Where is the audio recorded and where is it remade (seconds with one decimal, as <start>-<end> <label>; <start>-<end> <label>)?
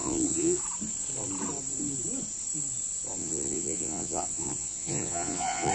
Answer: 0.0-0.6 remade; 0.6-3.2 recorded; 3.2-5.7 remade